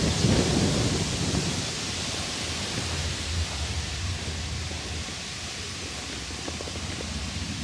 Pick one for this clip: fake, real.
real